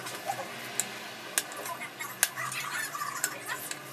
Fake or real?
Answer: real